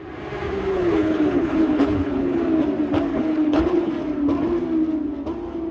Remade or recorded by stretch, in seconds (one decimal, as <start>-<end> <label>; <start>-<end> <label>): 0.0-0.7 recorded; 0.7-2.4 remade; 2.4-3.1 recorded; 3.1-3.9 remade; 3.9-5.7 recorded

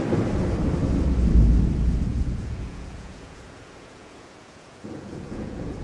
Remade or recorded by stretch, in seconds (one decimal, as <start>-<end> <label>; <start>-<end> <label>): 0.0-2.1 recorded; 2.1-5.8 remade

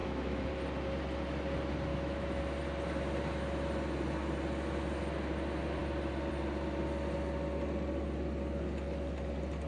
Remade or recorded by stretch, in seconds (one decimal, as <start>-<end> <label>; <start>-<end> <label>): 0.0-0.5 remade; 0.5-1.9 recorded; 1.9-2.4 remade; 2.4-9.7 recorded

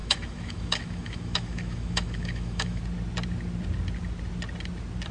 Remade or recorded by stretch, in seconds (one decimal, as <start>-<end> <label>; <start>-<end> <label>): 0.0-2.8 remade; 2.8-5.1 recorded

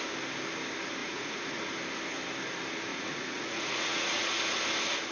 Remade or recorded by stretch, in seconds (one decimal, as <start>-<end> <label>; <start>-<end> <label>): 0.0-1.0 recorded; 1.0-1.6 remade; 1.6-2.9 recorded; 2.9-4.4 remade; 4.4-5.1 recorded

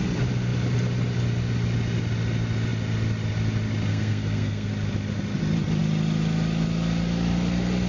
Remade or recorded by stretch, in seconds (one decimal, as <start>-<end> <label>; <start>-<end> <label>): 0.0-3.9 recorded; 3.9-4.7 remade; 4.7-7.9 recorded